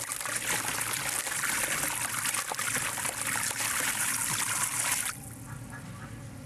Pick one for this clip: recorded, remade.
recorded